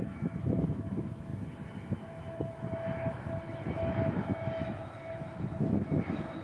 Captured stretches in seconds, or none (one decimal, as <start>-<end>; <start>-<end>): none